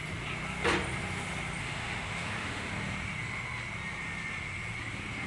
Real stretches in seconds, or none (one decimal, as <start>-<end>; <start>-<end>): 0.0-1.6; 2.7-5.3